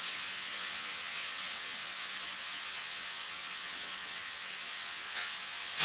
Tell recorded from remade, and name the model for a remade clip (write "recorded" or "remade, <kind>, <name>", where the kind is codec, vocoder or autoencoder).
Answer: remade, vocoder, WaveNeXt